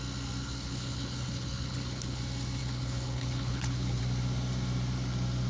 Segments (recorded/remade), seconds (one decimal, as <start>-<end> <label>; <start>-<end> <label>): 0.0-0.4 recorded; 0.4-2.2 remade; 2.2-2.6 recorded; 2.6-4.0 remade; 4.0-5.5 recorded